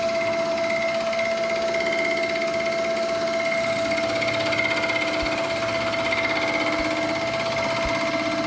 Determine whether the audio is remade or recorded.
recorded